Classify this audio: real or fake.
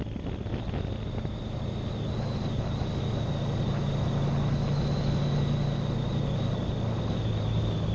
real